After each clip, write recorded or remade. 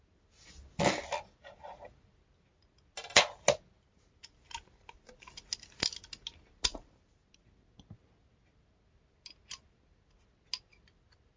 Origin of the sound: recorded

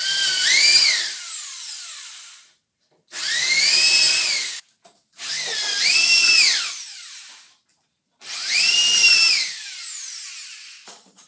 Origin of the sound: remade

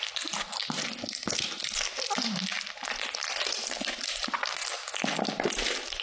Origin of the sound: recorded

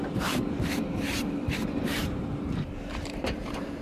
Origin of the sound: remade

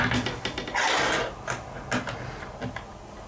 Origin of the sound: recorded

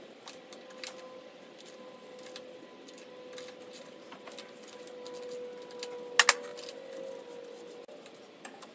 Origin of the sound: recorded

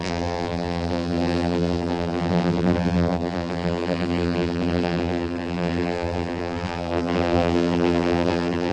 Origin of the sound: remade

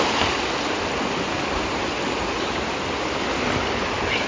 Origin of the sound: recorded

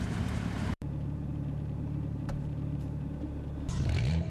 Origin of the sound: remade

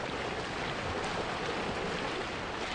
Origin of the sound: recorded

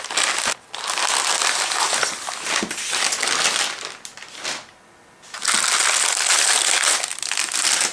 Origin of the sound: recorded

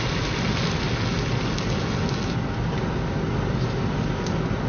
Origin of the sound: recorded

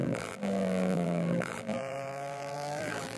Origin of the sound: remade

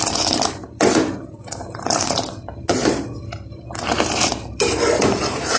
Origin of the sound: remade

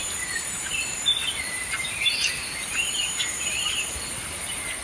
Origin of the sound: remade